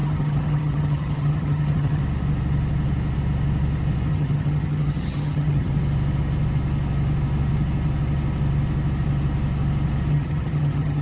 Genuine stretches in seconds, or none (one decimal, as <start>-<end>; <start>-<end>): 2.0-4.1; 5.7-10.1